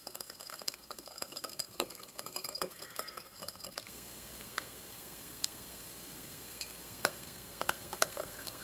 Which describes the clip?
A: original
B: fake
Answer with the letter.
B